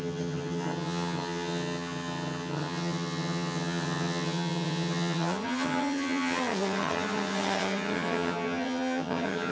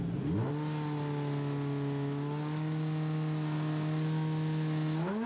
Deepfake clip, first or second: first